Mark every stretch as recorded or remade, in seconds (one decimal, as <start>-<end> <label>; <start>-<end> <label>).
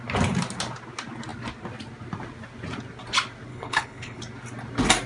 0.0-3.5 recorded; 3.5-4.2 remade; 4.2-5.1 recorded